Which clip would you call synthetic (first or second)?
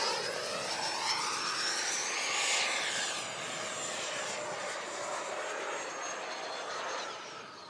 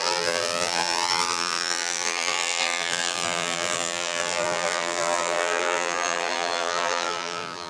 second